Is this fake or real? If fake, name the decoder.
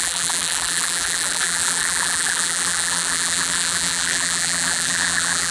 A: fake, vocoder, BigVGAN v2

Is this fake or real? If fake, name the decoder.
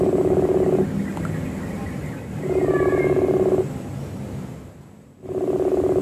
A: real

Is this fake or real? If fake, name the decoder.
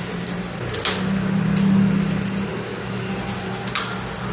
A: real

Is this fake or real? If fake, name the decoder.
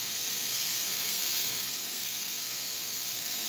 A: fake, codec, SNAC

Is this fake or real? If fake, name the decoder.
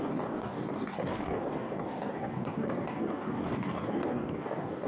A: fake, codec, DAC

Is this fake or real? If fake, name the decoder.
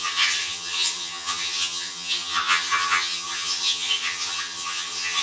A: fake, vocoder, HiFi-GAN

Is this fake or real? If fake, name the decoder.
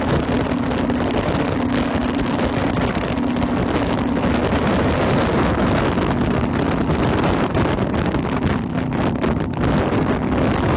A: real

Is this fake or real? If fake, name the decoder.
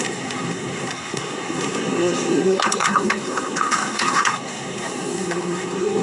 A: fake, codec, SNAC